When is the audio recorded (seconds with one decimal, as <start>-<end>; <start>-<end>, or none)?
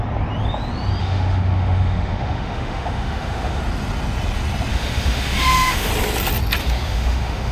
0.0-1.0; 3.6-4.7; 5.9-6.6